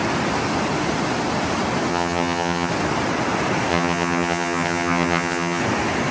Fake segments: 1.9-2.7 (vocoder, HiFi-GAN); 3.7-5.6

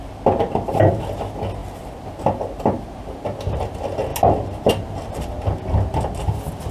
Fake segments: none

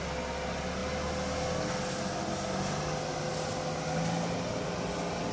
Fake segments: none

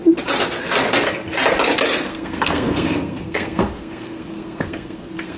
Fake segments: 2.1-5.4 (codec, SNAC)

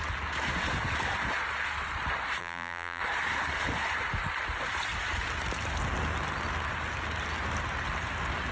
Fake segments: 2.4-3.0 (vocoder, BigVGAN v2)